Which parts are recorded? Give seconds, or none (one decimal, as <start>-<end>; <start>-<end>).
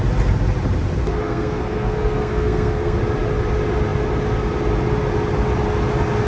0.0-1.0; 3.0-6.3